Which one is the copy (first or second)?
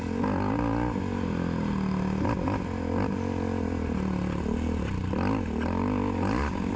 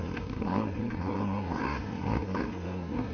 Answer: second